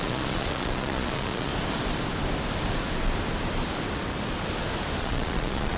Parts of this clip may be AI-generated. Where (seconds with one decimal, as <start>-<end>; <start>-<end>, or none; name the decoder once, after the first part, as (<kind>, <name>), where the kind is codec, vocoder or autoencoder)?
0.0-1.5 (vocoder, Vocos); 5.0-5.8